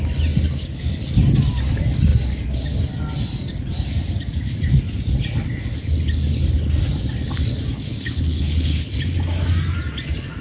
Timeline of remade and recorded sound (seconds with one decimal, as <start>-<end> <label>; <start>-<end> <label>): 0.0-7.9 recorded; 7.9-8.9 remade; 8.9-10.4 recorded